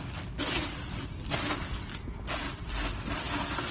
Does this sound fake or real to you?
real